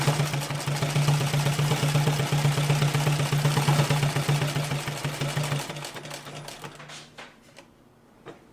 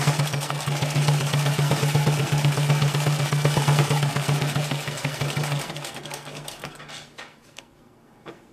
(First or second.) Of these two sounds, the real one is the first